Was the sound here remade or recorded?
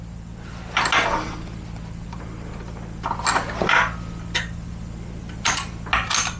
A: recorded